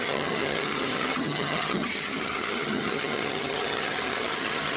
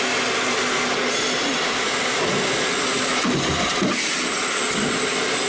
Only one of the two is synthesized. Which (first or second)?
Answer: first